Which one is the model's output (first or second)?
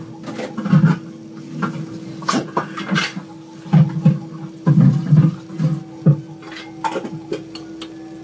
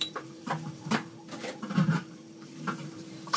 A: second